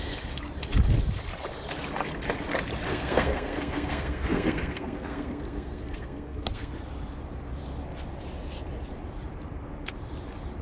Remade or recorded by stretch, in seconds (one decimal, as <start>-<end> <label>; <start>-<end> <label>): 0.0-2.9 recorded; 2.9-6.7 remade; 6.7-10.6 recorded